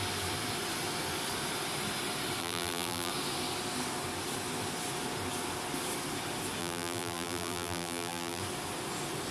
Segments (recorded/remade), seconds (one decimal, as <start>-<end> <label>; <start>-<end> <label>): 0.0-2.4 recorded; 2.4-3.1 remade; 3.1-6.6 recorded; 6.6-8.4 remade; 8.4-9.3 recorded